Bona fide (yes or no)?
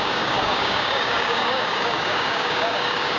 no